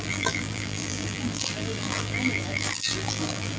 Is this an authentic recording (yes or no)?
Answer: no